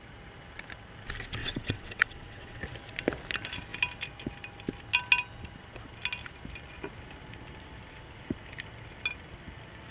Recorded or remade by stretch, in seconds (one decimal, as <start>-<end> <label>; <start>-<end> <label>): 0.0-1.4 recorded; 1.4-2.6 remade; 2.6-9.9 recorded